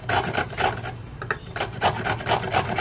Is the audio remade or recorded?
recorded